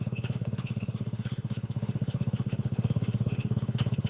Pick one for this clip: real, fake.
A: fake